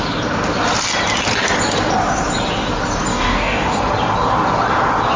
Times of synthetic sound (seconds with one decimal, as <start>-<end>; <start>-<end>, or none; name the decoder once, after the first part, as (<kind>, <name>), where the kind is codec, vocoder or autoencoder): 3.1-3.8 (codec, DAC)